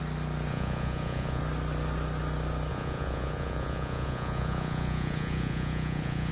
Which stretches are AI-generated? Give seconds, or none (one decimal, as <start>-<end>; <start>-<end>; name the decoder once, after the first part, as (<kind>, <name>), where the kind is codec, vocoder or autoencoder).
0.5-1.4 (vocoder, Vocos); 2.7-6.3